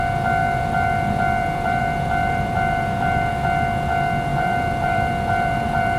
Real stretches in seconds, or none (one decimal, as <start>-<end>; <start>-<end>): 0.0-0.4; 3.3-4.3